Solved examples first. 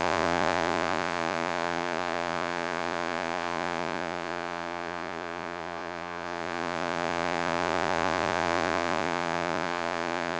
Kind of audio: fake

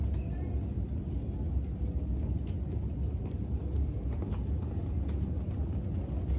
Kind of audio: real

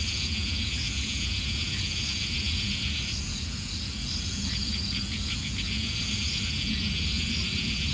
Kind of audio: fake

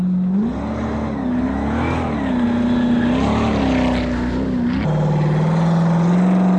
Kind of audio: real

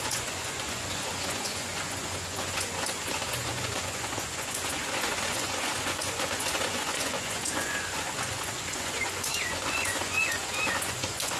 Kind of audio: fake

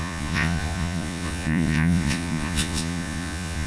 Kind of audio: fake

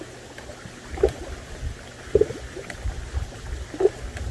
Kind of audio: real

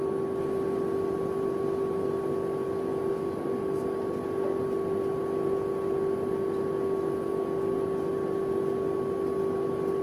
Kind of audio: real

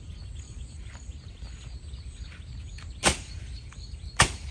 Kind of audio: real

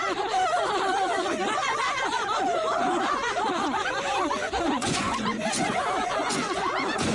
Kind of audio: fake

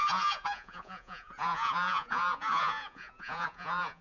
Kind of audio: fake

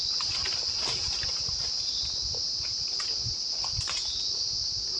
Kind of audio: real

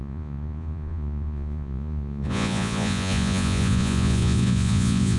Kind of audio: fake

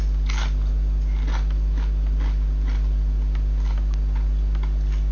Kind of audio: real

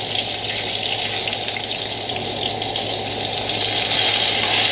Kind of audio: real